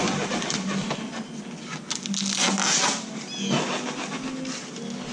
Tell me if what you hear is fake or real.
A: real